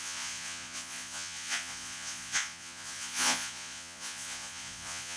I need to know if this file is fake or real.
fake